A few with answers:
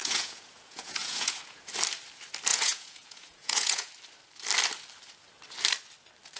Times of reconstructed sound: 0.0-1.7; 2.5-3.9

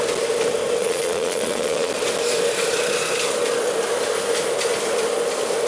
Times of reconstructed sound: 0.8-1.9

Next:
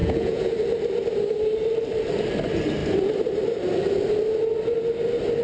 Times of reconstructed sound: 0.0-0.5

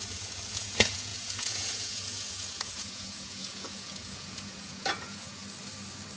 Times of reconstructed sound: 0.0-5.4

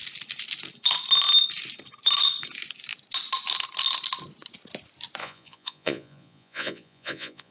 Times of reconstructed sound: 5.2-7.5

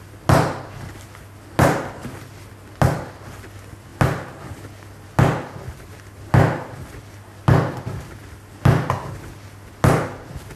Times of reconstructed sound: none

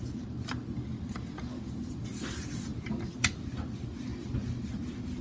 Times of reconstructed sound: none

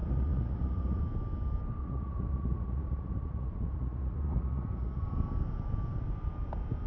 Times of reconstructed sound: 0.0-1.0; 1.8-5.0